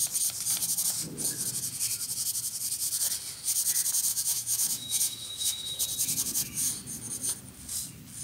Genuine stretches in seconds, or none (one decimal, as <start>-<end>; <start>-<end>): 0.0-4.1; 5.8-8.2